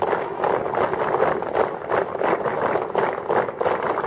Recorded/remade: recorded